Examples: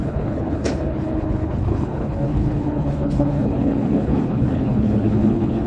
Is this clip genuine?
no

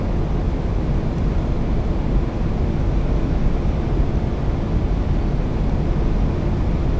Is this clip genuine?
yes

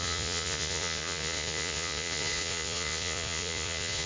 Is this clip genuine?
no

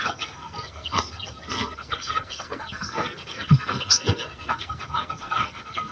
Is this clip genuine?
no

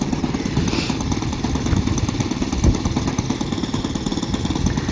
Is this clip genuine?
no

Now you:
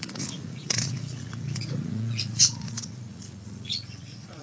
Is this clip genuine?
no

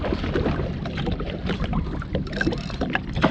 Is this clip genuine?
yes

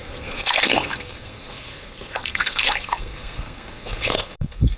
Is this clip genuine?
no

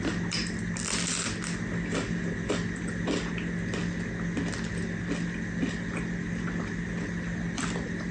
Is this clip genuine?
yes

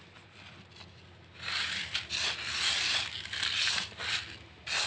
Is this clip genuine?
yes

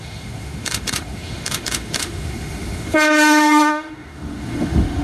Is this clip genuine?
no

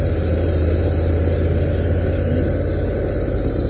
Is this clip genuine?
yes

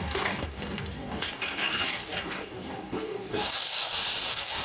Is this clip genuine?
no